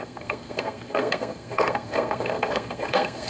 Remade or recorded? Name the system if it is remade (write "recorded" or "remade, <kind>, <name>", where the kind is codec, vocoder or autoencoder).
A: remade, codec, SNAC